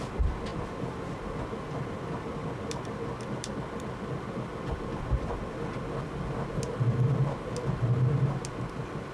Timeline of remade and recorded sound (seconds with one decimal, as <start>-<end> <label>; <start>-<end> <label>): 0.0-9.1 recorded